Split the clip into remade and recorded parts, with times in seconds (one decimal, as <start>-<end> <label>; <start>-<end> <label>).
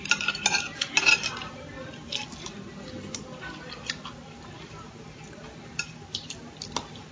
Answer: 0.0-7.1 recorded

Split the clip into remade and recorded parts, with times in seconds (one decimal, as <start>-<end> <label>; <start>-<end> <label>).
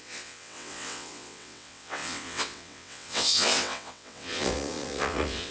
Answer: 0.0-5.5 remade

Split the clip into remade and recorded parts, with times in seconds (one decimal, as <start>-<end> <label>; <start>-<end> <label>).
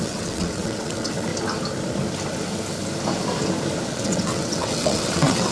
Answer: 0.0-1.3 remade; 1.3-3.9 recorded; 3.9-5.5 remade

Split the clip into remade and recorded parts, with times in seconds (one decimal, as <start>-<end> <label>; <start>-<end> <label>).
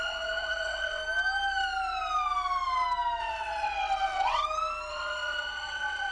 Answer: 0.0-1.0 remade; 1.0-3.2 recorded; 3.2-4.4 remade; 4.4-4.9 recorded; 4.9-6.1 remade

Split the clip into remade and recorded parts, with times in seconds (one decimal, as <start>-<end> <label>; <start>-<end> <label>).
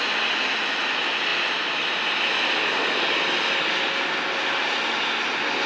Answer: 0.0-5.7 recorded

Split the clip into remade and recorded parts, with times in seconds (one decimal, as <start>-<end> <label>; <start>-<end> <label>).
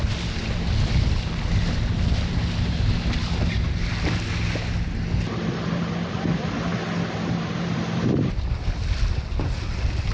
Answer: 0.0-10.1 recorded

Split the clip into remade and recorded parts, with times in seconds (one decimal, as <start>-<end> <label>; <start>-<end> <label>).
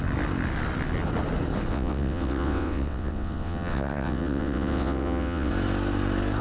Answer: 0.0-1.7 recorded; 1.7-5.5 remade; 5.5-6.4 recorded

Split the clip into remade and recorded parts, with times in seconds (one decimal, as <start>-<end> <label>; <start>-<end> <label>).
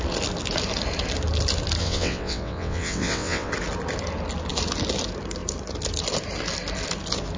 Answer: 0.0-1.8 recorded; 1.8-3.5 remade; 3.5-7.4 recorded